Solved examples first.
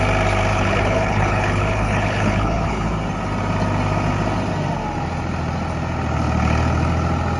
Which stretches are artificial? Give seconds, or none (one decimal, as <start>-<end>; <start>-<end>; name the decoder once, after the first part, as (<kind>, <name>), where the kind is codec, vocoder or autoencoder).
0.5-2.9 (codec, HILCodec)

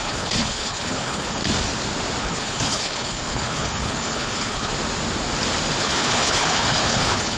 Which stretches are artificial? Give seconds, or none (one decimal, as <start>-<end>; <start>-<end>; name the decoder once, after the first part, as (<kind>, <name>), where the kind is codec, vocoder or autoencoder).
0.0-1.4 (codec, HILCodec); 2.2-4.7; 5.8-7.4

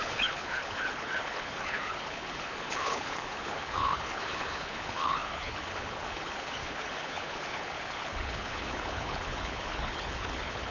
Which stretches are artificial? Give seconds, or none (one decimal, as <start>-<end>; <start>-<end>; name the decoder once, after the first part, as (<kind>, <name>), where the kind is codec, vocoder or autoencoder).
0.0-10.7 (codec, HILCodec)